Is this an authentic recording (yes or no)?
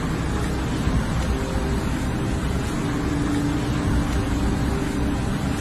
yes